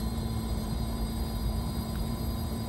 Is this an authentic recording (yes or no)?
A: no